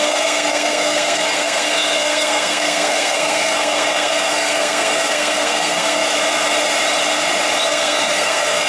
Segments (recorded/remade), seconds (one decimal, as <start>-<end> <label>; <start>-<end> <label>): 0.0-6.0 remade; 6.0-7.7 recorded; 7.7-8.7 remade